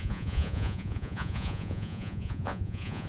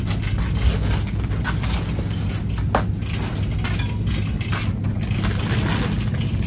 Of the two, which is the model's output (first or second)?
first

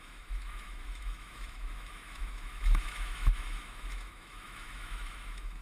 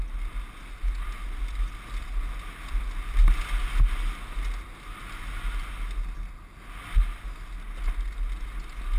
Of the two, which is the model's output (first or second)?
first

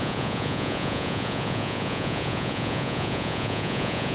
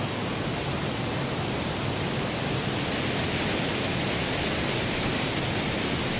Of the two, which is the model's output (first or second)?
first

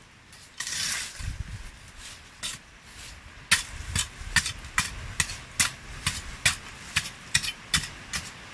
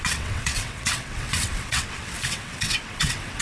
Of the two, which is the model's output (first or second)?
second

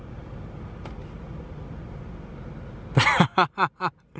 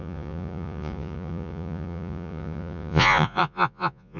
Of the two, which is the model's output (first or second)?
second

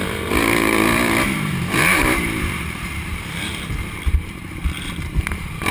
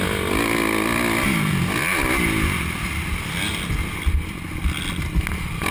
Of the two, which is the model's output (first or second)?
first